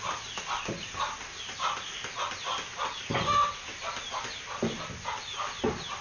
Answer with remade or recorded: recorded